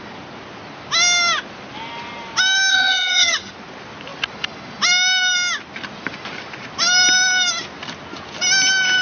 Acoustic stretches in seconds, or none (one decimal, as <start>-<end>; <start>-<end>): 0.0-2.7; 3.5-9.0